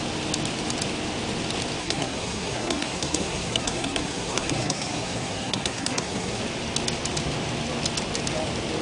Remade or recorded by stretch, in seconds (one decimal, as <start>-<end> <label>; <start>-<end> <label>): 0.0-1.8 recorded; 1.8-6.4 remade; 6.4-8.8 recorded